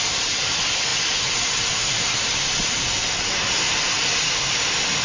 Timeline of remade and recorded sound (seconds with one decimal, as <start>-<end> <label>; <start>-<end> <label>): 0.0-5.0 recorded